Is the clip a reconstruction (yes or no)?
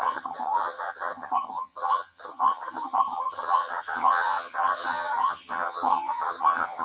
yes